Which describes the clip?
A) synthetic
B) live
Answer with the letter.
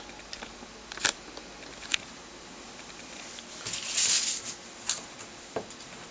B